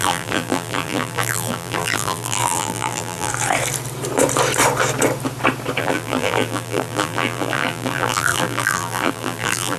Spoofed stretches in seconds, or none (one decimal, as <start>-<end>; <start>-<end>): 0.0-3.3; 5.8-9.8